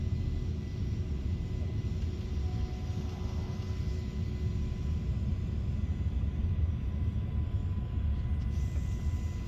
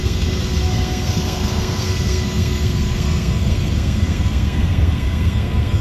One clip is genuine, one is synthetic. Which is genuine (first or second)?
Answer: first